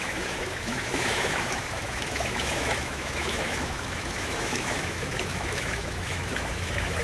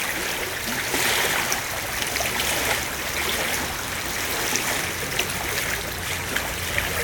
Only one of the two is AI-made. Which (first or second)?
first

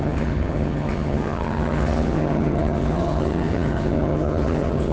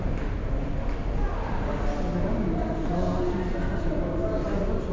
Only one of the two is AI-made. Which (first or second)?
first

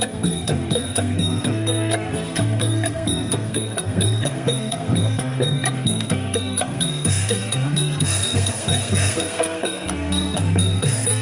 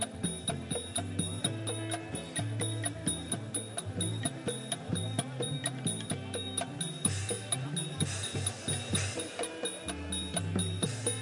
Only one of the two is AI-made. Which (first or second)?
first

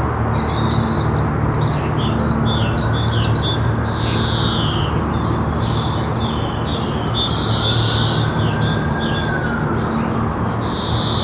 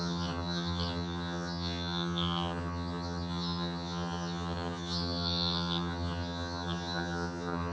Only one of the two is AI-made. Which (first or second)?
second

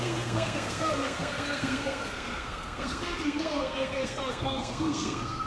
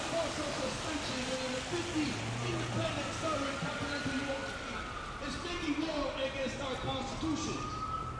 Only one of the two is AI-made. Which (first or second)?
first